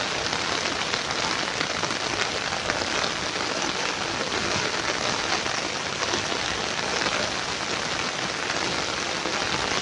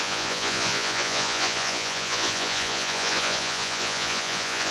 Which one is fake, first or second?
second